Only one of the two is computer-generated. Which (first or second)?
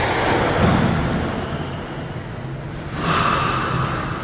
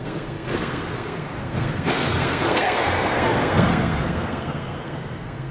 second